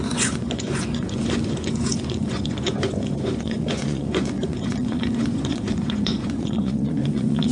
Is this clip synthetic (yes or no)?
yes